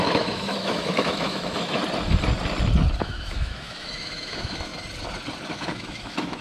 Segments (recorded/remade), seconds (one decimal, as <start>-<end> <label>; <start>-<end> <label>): 0.0-1.8 remade; 1.8-3.0 recorded; 3.0-4.7 remade; 4.7-5.5 recorded; 5.5-6.4 remade